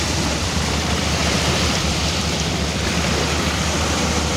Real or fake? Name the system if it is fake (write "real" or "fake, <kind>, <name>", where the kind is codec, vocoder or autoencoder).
fake, vocoder, BigVGAN v2